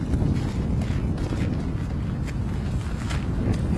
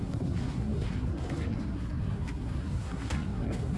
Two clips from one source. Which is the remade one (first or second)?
second